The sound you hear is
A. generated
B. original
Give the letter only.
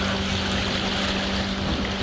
B